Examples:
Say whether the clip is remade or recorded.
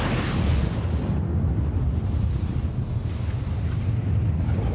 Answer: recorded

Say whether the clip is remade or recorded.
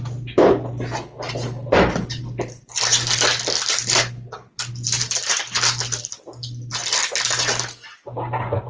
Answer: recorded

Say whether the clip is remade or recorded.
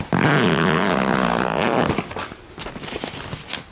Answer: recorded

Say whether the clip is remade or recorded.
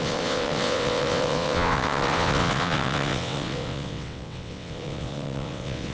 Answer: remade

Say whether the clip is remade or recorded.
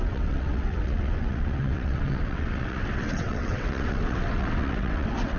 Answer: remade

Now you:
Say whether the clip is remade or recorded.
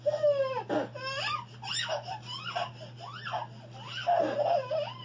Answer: recorded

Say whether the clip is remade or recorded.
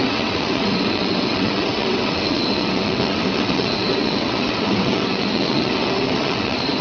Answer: remade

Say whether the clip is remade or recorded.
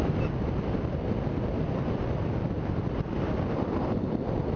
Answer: recorded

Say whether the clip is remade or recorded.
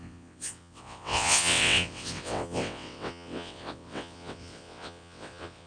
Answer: remade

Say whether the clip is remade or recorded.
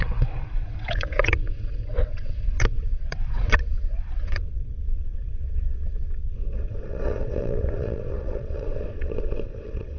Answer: remade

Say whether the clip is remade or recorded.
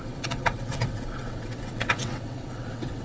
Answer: remade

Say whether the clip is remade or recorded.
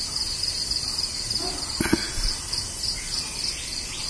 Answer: recorded